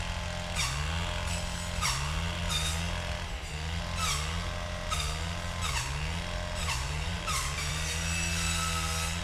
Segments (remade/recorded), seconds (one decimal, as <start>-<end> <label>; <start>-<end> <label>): 0.0-6.6 recorded; 6.6-7.7 remade; 7.7-9.2 recorded